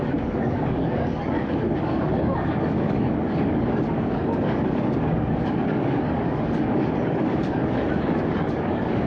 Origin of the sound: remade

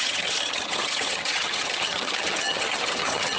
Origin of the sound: remade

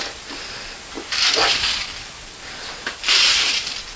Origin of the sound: recorded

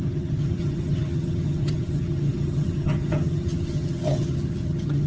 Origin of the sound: remade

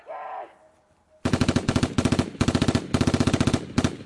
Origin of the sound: recorded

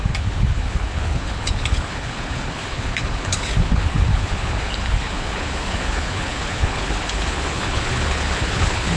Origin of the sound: remade